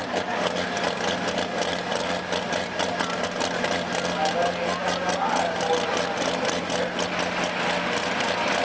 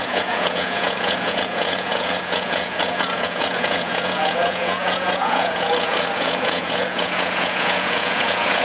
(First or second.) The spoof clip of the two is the second